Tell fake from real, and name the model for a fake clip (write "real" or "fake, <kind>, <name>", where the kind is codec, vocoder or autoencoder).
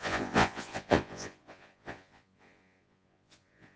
fake, vocoder, Vocos